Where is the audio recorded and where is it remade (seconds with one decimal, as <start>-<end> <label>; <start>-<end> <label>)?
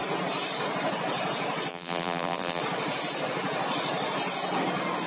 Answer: 0.0-1.7 recorded; 1.7-2.6 remade; 2.6-5.1 recorded